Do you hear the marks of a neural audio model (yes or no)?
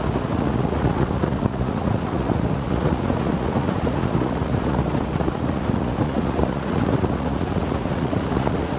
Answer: yes